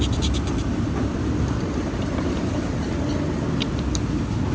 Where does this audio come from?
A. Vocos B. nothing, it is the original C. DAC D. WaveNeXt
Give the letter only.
B